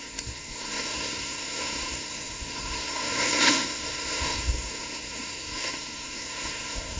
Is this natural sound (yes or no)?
no